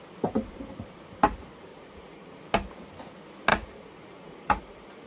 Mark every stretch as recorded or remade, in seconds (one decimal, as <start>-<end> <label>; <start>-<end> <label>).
0.0-1.7 recorded; 1.7-2.4 remade; 2.4-3.5 recorded; 3.5-5.1 remade